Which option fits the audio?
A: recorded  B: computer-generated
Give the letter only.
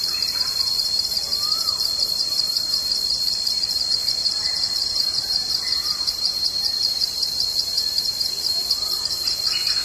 B